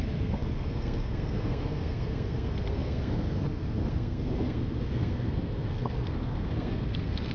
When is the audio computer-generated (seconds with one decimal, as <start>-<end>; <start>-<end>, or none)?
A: 0.0-7.3